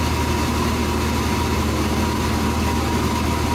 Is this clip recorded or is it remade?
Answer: recorded